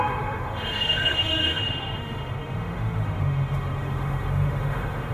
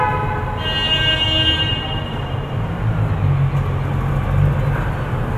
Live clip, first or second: second